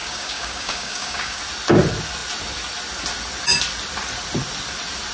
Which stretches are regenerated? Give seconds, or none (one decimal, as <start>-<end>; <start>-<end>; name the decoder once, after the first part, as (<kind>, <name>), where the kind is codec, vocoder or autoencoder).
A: 0.0-1.4 (codec, DAC)